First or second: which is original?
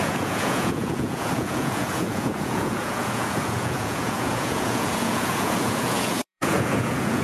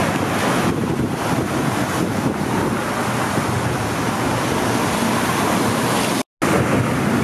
second